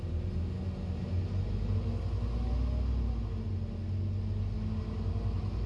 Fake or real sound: real